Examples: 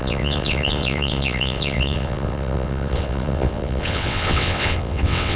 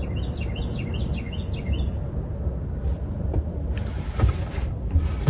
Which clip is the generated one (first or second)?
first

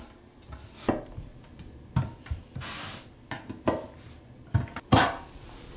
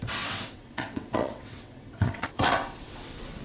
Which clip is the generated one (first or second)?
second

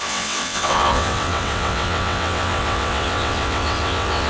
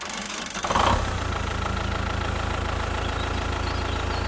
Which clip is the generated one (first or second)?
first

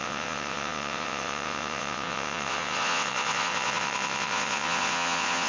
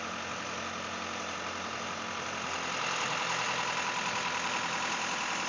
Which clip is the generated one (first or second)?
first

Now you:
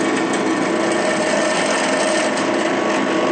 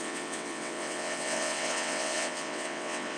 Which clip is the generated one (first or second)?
second